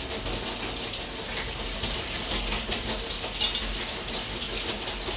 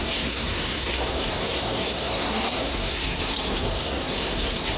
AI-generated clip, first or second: second